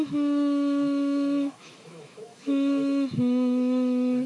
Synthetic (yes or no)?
yes